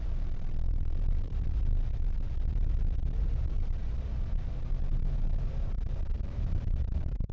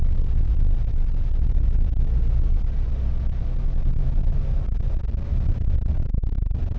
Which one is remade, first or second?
first